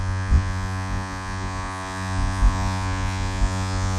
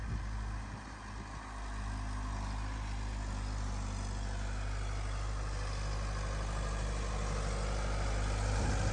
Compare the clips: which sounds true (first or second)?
second